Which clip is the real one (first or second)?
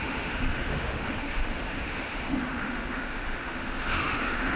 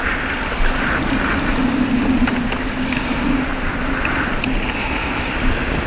second